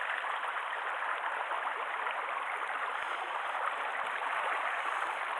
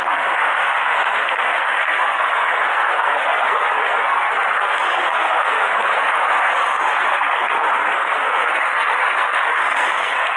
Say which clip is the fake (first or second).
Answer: second